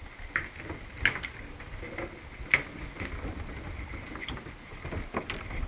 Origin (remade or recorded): recorded